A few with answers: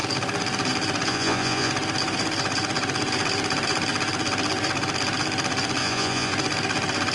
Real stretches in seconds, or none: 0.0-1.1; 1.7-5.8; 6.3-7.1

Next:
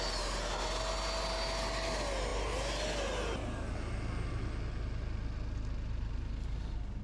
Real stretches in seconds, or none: 0.0-7.0